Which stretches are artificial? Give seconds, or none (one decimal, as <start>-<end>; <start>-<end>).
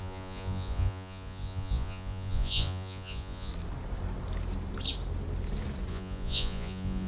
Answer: 0.0-3.5; 5.9-7.1